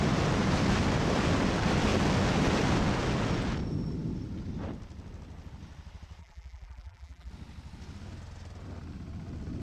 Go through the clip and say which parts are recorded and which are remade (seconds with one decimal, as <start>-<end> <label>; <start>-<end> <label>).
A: 0.0-6.2 recorded; 6.2-7.3 remade; 7.3-9.6 recorded